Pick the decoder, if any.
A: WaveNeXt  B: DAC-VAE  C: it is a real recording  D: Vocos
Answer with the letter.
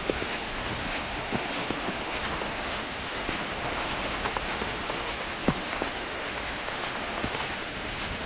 B